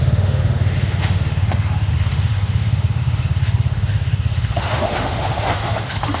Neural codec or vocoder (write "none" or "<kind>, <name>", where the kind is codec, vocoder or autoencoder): autoencoder, DAC-VAE